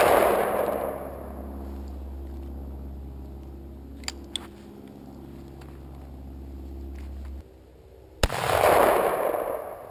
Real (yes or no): yes